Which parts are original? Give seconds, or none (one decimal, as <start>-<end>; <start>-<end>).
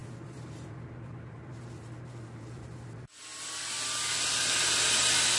2.7-3.3; 4.1-5.4